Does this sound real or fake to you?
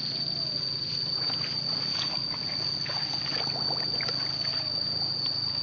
real